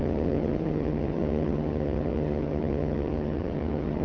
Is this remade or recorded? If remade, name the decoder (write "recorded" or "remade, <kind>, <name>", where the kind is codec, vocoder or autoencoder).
remade, vocoder, HiFi-GAN